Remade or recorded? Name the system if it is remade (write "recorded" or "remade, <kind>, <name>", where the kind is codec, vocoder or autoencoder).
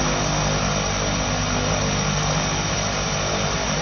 recorded